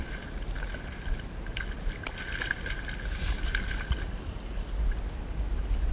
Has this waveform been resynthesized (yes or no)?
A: no